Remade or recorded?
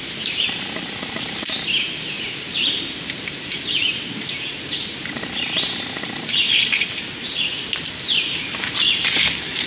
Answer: remade